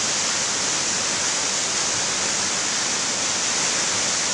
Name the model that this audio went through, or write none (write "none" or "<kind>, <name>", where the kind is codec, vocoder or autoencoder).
none